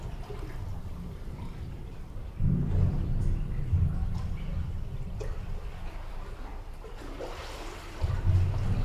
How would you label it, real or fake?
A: real